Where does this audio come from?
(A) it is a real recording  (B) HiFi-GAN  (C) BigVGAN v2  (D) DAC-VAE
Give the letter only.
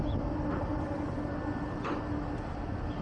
A